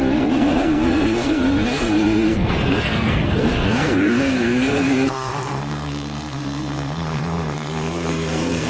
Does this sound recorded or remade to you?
remade